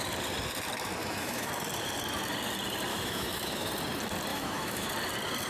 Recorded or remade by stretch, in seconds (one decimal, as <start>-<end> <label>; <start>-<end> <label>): 0.0-1.0 recorded; 1.0-1.5 remade; 1.5-2.9 recorded; 2.9-3.7 remade; 3.7-4.3 recorded; 4.3-4.9 remade; 4.9-5.5 recorded